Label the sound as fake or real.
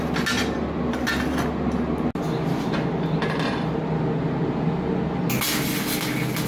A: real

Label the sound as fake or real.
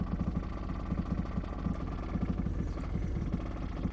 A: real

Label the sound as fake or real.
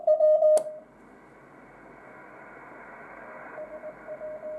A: real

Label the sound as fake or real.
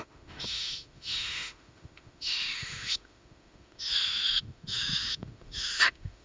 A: fake